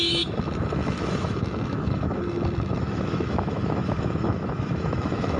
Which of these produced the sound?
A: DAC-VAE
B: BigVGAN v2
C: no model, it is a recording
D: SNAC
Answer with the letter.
A